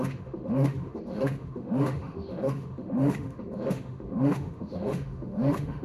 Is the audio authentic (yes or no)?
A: no